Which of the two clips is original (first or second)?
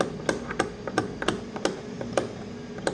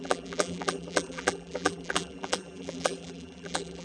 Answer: first